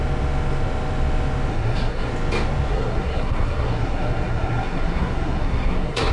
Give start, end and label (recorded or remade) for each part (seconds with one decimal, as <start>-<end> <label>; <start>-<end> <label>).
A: 0.0-1.5 recorded; 1.5-2.1 remade; 2.1-2.7 recorded; 2.7-6.1 remade